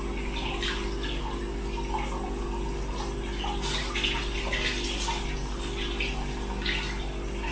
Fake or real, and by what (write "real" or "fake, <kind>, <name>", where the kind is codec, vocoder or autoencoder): real